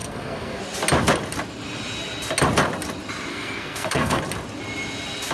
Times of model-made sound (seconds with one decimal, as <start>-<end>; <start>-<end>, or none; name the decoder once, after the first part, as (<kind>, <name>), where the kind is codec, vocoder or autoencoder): 0.0-0.6 (codec, SNAC); 3.3-4.2